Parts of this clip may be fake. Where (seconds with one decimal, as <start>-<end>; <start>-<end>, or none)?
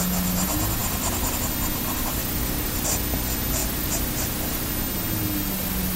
0.8-1.5; 2.2-2.9; 3.6-4.7